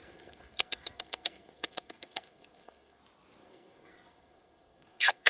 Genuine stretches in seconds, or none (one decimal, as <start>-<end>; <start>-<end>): 3.0-3.4